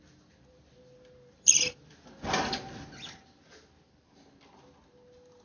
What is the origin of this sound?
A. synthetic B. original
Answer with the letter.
B